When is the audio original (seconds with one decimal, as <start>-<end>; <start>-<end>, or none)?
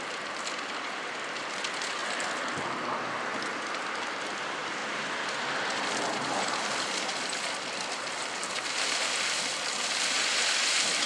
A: 2.0-4.1